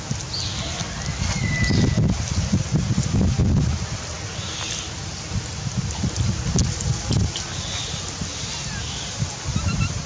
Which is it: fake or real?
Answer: real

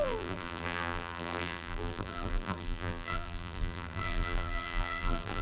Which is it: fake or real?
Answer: fake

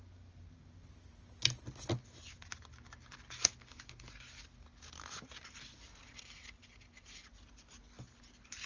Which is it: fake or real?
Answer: real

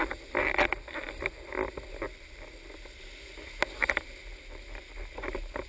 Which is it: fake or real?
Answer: real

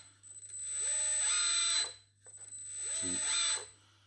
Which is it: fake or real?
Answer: real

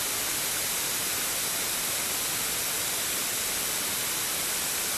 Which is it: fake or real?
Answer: real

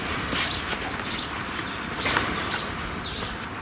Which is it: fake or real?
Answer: fake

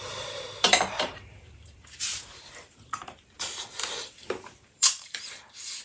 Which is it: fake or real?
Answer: fake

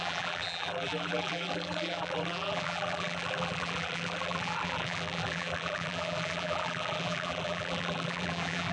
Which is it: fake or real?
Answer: fake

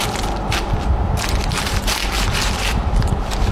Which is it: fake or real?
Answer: real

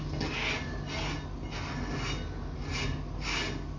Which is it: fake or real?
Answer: real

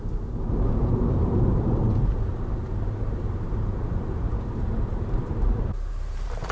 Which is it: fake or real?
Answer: fake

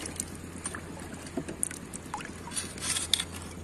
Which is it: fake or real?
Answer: real